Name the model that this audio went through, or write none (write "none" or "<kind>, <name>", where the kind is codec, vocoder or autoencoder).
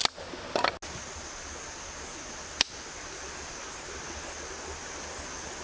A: none